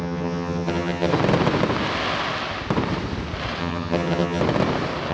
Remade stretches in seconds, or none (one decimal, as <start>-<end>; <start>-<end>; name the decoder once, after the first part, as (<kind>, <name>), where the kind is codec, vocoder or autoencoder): 0.0-1.1 (vocoder, HiFi-GAN); 3.6-4.4